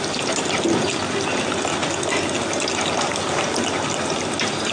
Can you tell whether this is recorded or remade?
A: recorded